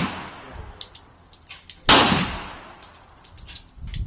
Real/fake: real